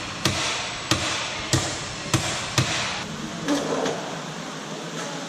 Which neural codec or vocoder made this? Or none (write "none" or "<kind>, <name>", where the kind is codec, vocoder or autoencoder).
vocoder, BigVGAN v2